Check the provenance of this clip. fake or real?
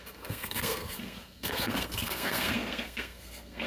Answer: fake